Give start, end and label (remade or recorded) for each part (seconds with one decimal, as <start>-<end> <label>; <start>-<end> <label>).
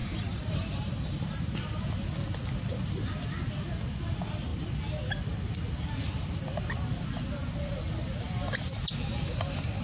0.0-1.4 remade; 1.4-9.8 recorded